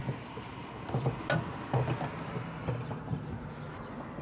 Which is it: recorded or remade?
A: recorded